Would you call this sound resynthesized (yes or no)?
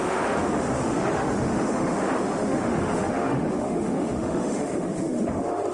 yes